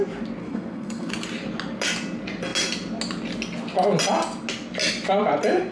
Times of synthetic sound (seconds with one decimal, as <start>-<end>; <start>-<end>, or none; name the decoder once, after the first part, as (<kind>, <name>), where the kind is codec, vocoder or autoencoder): 0.4-1.1 (codec, SNAC)

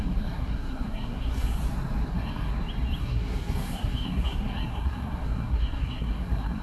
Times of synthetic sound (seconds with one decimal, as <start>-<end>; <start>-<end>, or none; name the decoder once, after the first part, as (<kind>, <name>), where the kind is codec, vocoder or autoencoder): 0.0-1.6 (codec, SNAC); 2.1-2.5; 3.0-6.6

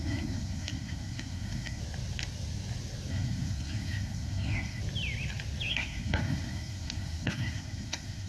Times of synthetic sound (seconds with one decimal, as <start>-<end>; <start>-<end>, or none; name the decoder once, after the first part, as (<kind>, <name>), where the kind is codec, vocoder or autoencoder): 0.0-1.8 (codec, SNAC); 3.1-4.8; 5.7-8.3